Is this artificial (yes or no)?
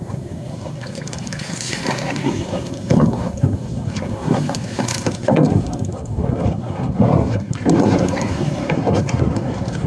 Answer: yes